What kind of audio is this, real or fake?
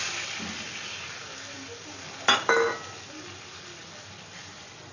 real